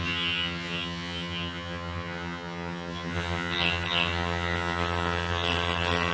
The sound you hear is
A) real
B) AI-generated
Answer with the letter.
B